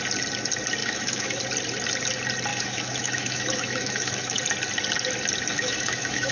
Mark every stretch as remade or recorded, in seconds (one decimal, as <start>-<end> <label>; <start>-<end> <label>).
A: 0.0-0.8 recorded; 0.8-1.4 remade; 1.4-2.5 recorded; 2.5-4.4 remade; 4.4-5.5 recorded; 5.5-6.3 remade